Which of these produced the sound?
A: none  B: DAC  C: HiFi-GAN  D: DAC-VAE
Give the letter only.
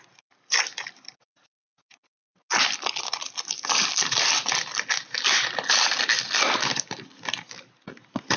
A